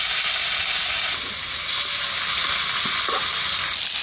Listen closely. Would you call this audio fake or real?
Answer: real